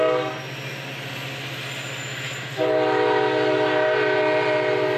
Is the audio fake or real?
real